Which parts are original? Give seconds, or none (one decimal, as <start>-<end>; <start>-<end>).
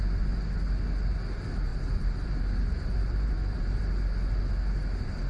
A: 0.0-1.7; 3.8-5.3